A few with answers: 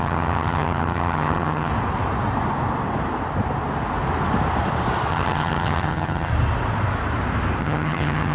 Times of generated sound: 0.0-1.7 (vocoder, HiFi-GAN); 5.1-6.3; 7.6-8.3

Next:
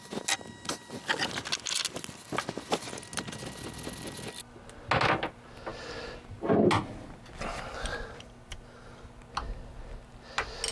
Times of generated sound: none

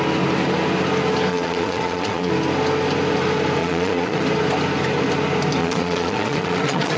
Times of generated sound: 1.3-2.3 (vocoder, Vocos); 3.6-4.2; 5.6-7.0

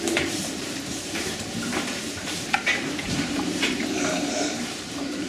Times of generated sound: 0.0-5.3 (vocoder, BigVGAN v2)

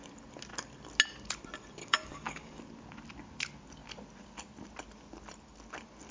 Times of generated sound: 1.8-2.6 (codec, DAC)

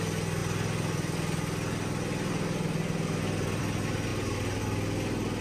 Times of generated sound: none

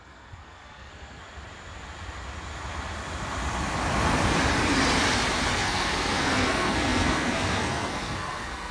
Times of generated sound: 0.0-1.2 (codec, SNAC); 5.5-8.7